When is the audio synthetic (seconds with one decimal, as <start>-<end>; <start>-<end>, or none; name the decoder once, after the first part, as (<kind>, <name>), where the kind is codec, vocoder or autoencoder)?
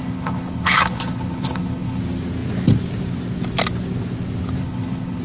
0.0-2.0 (codec, HILCodec); 4.6-5.2